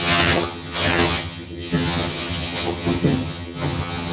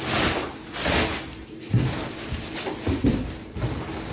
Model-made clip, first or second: first